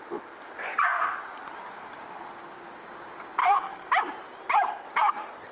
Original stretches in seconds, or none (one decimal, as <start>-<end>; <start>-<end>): 0.0-3.4; 3.9-5.5